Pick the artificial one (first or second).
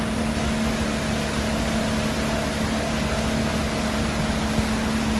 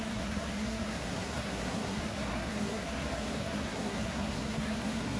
second